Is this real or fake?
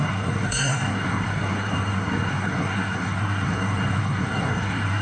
fake